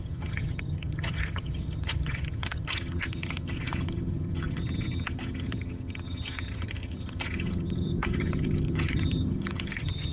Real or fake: fake